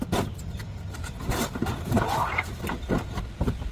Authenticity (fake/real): real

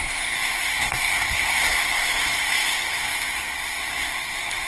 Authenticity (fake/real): fake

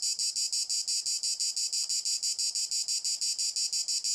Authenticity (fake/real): real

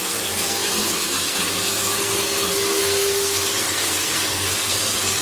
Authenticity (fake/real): fake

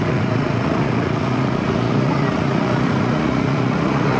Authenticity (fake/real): fake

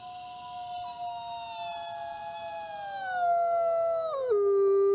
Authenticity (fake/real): real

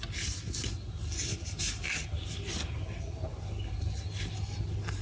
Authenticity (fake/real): real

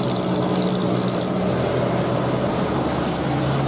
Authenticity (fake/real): real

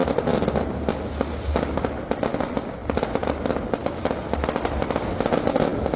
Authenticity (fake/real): real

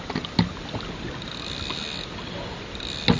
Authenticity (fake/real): real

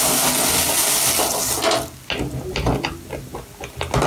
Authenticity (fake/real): real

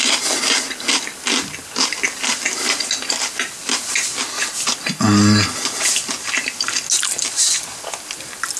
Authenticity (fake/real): real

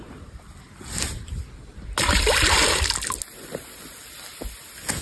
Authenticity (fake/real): real